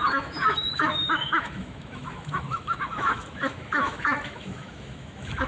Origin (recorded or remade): remade